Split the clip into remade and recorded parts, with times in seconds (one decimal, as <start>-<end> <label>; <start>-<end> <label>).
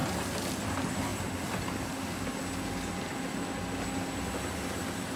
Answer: 0.0-5.2 recorded